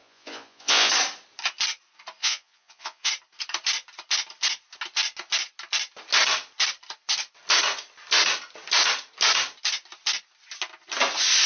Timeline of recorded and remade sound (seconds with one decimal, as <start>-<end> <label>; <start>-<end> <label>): 0.0-0.9 remade; 0.9-2.2 recorded; 2.2-3.1 remade; 3.1-11.5 recorded